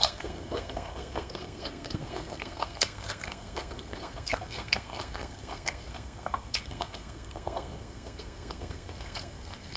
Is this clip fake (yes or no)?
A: yes